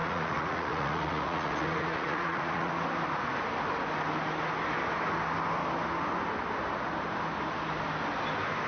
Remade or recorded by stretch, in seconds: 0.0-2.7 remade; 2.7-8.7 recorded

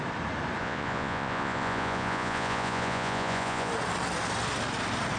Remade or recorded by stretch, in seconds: 0.0-0.6 recorded; 0.6-3.7 remade; 3.7-5.2 recorded

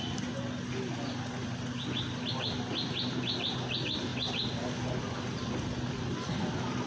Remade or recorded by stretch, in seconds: 0.0-6.9 recorded

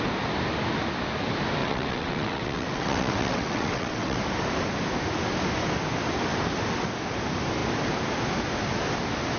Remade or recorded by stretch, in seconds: 0.0-1.6 recorded; 1.6-4.2 remade; 4.2-9.4 recorded

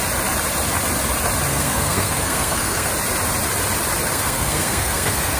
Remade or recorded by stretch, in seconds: 0.0-1.5 recorded; 1.5-2.9 remade; 2.9-4.1 recorded; 4.1-5.4 remade

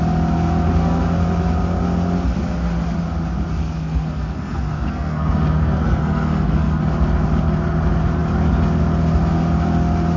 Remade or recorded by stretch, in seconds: 0.0-3.6 recorded; 3.6-6.8 remade; 6.8-10.2 recorded

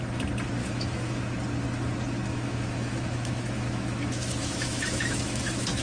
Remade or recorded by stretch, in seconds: 0.0-0.6 recorded; 0.6-1.2 remade; 1.2-2.3 recorded; 2.3-5.8 remade

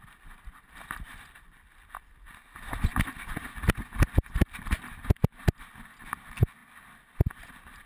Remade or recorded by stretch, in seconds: 0.0-7.9 recorded